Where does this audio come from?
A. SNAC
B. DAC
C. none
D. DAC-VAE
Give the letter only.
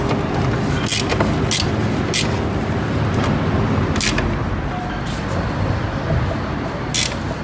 C